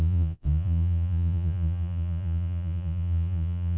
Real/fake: fake